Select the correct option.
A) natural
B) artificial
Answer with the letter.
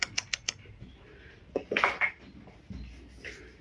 A